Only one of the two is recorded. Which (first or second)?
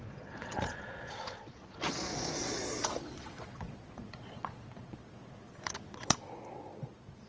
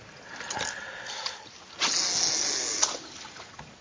second